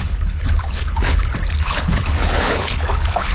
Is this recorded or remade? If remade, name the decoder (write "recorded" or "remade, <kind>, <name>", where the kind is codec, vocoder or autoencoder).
remade, codec, HILCodec